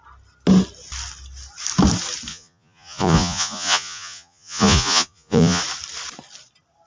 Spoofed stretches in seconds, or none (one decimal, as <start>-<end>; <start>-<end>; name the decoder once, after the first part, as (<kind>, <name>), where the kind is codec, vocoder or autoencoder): 2.3-5.6 (vocoder, Vocos)